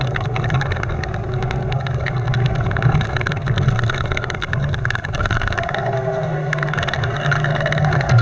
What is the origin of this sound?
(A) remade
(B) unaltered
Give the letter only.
A